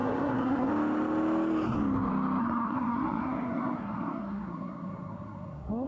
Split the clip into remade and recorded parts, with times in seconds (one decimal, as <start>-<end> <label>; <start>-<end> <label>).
0.0-0.7 remade; 0.7-2.4 recorded; 2.4-5.9 remade